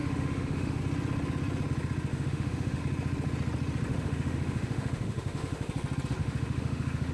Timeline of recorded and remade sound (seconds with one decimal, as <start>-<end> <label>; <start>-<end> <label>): 0.0-0.8 remade; 0.8-2.1 recorded; 2.1-2.8 remade; 2.8-3.9 recorded; 3.9-5.7 remade; 5.7-6.2 recorded; 6.2-7.1 remade